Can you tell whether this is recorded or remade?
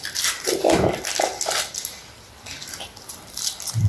recorded